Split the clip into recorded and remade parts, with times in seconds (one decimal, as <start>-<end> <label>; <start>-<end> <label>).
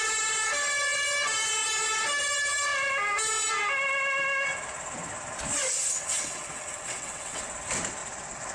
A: 0.0-5.7 recorded; 5.7-7.4 remade; 7.4-8.5 recorded